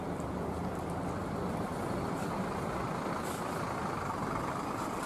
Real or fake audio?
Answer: real